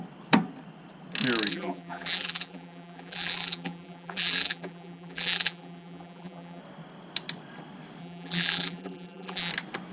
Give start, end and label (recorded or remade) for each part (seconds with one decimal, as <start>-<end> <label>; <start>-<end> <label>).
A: 0.0-1.5 recorded; 1.5-6.6 remade; 6.6-8.0 recorded; 8.0-9.5 remade; 9.5-9.9 recorded